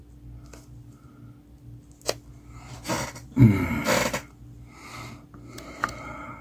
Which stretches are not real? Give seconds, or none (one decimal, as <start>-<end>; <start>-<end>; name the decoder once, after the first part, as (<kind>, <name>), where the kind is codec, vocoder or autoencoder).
none